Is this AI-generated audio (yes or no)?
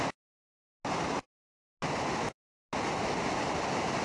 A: no